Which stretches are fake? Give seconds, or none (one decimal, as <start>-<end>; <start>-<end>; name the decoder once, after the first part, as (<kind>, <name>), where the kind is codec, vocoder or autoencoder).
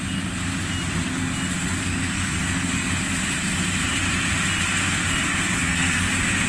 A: 1.8-2.9 (codec, SNAC); 5.6-6.1